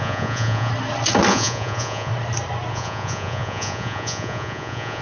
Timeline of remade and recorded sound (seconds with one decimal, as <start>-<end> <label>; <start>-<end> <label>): 0.0-0.7 remade; 0.7-1.3 recorded; 1.3-2.1 remade; 2.1-2.7 recorded; 2.7-5.0 remade